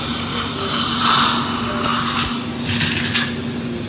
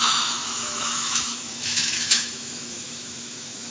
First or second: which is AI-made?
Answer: second